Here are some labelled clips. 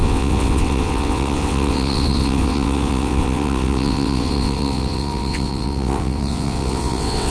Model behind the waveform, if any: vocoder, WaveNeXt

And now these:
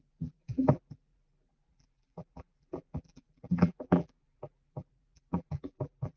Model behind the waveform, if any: vocoder, BigVGAN v2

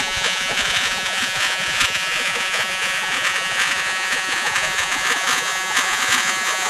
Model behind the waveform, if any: vocoder, Vocos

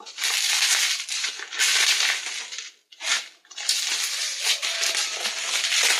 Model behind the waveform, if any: none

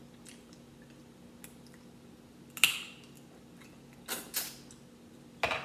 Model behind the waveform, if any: none